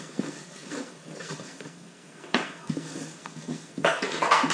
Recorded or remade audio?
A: remade